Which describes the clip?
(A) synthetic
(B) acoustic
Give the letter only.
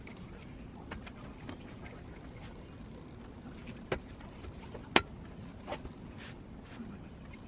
B